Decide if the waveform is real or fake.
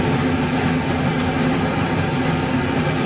real